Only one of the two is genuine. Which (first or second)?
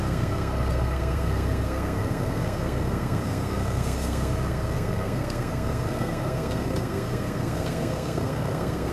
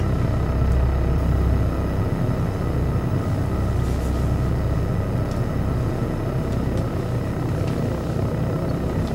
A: second